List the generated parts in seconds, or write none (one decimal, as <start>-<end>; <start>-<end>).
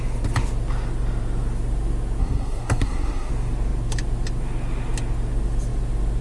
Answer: 2.2-3.3